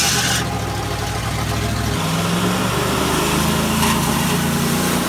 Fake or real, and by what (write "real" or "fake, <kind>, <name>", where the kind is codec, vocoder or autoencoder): real